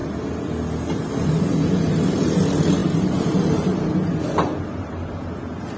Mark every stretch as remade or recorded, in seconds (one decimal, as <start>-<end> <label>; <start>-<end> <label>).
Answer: 0.0-2.8 recorded; 2.8-3.9 remade; 3.9-5.8 recorded